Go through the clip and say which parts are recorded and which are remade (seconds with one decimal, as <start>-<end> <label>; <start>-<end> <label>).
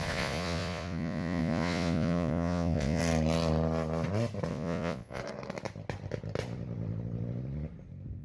0.0-3.0 remade; 3.0-4.5 recorded; 4.5-5.2 remade; 5.2-8.2 recorded